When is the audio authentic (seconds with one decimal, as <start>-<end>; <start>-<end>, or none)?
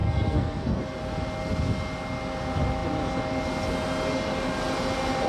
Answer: 0.8-5.3